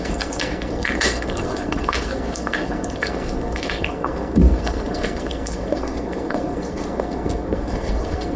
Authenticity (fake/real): fake